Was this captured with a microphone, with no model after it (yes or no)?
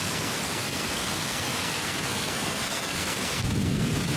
no